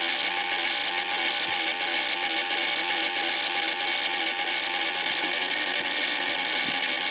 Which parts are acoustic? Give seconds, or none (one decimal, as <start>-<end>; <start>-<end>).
0.0-7.1